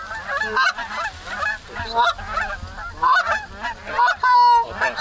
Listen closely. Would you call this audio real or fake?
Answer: real